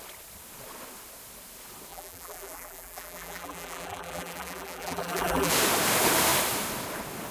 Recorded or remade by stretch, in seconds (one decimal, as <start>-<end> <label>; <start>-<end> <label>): 0.0-1.9 recorded; 1.9-5.5 remade; 5.5-7.3 recorded